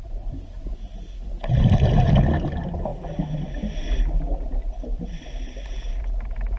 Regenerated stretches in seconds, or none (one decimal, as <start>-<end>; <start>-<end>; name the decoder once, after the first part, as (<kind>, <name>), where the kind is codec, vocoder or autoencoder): none